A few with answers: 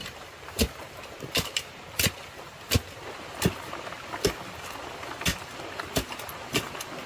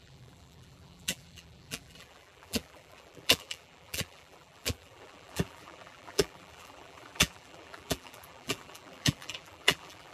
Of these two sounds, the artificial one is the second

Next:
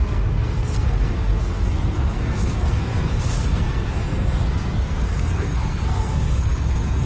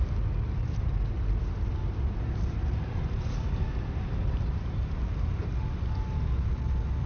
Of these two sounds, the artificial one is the first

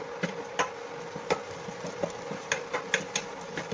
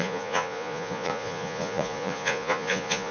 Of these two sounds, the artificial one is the second